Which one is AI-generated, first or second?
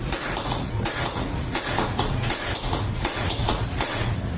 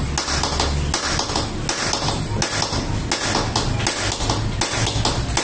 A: first